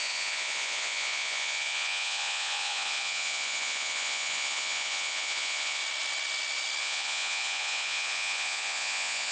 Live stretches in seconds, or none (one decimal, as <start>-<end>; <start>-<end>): 5.8-6.8